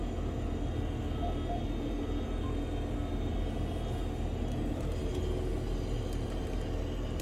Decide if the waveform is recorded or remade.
recorded